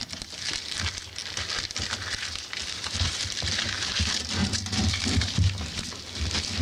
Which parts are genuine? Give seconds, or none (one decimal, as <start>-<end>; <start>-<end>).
0.0-2.6; 3.2-4.4; 5.2-6.6